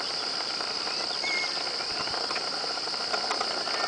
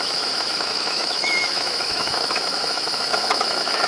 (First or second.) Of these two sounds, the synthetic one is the second